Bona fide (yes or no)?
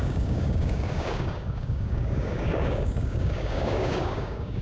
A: no